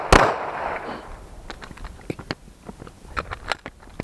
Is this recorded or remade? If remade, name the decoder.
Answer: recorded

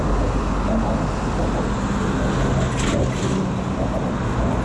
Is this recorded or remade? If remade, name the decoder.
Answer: recorded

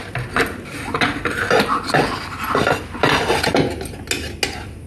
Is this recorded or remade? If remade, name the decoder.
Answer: recorded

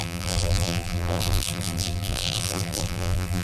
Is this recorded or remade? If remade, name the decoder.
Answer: remade, vocoder, BigVGAN v2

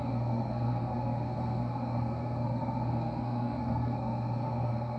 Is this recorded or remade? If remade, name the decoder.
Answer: remade, codec, SNAC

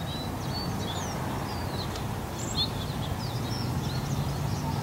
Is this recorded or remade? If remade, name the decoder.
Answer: recorded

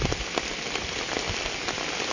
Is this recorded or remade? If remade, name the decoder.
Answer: recorded